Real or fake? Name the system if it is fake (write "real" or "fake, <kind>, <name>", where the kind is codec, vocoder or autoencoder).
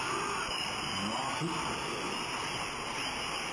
real